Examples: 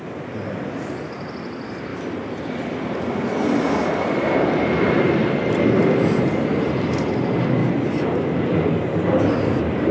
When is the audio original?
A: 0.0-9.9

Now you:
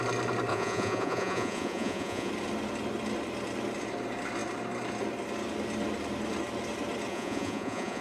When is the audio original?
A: 0.0-0.5; 2.3-7.1

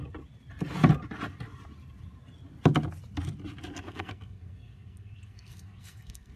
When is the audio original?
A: 0.0-3.8

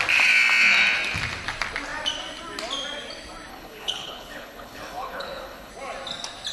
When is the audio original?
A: 0.0-3.5; 5.7-6.5

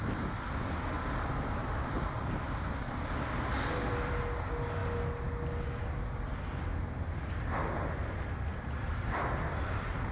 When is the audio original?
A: 0.0-1.6; 4.2-8.5